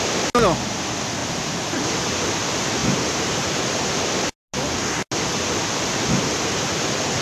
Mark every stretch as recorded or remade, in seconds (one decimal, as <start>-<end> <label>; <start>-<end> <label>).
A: 0.0-1.2 recorded; 1.2-1.8 remade; 1.8-2.8 recorded; 2.8-3.9 remade; 3.9-7.2 recorded